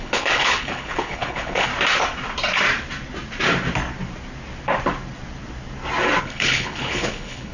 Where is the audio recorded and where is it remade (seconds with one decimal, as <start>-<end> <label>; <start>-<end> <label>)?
0.0-1.7 remade; 1.7-6.2 recorded; 6.2-7.5 remade

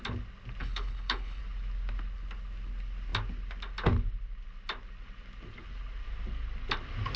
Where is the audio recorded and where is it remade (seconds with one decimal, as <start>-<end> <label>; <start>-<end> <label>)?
0.0-0.6 recorded; 0.6-1.4 remade; 1.4-7.2 recorded